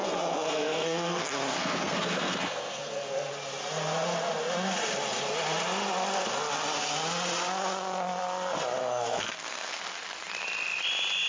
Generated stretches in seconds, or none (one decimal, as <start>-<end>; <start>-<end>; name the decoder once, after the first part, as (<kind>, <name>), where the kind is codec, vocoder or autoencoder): 0.0-1.2 (codec, SNAC); 1.6-3.3; 8.8-9.8